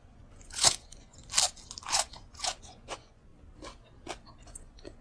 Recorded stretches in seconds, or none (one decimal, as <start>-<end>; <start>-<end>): 1.2-1.9; 3.3-4.4